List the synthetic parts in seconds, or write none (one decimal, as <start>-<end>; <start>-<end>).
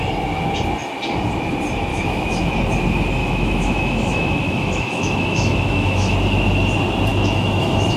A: 1.9-2.5; 3.2-6.1; 7.1-8.0